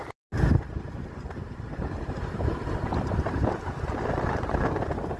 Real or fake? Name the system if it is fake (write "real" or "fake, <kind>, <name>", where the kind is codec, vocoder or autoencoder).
real